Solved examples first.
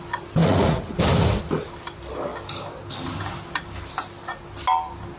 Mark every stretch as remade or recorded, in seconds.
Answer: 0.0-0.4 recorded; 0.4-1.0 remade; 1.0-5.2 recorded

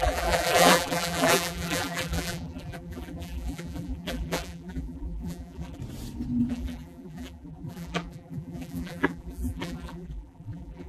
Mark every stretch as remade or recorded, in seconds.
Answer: 0.0-5.8 remade; 5.8-6.5 recorded; 6.5-10.9 remade

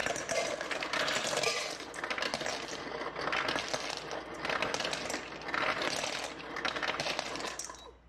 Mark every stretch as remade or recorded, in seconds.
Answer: 0.0-2.0 remade; 2.0-8.1 recorded

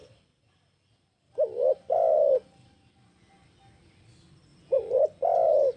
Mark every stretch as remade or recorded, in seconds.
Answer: 0.0-4.5 recorded; 4.5-5.0 remade; 5.0-5.8 recorded

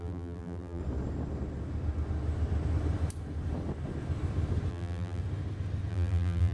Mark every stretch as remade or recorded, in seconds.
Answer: 0.0-0.8 remade; 0.8-4.7 recorded; 4.7-5.2 remade; 5.2-5.9 recorded; 5.9-6.5 remade

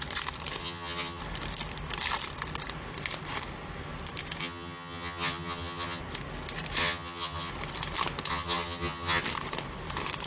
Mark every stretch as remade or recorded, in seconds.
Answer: 0.0-0.6 recorded; 0.6-1.2 remade; 1.2-4.4 recorded; 4.4-6.0 remade; 6.0-6.8 recorded; 6.8-7.5 remade; 7.5-8.3 recorded; 8.3-9.2 remade; 9.2-10.3 recorded

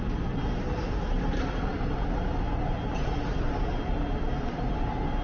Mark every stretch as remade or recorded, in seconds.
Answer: 0.0-5.2 recorded